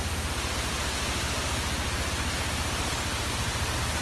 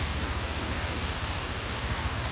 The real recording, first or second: first